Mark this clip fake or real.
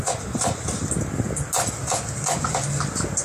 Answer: real